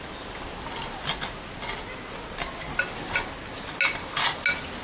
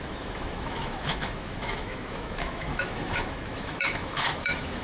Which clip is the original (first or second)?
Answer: first